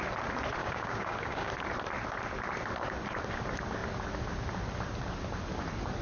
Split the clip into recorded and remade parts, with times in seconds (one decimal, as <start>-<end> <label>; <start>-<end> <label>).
0.0-0.6 recorded; 0.6-1.5 remade; 1.5-6.0 recorded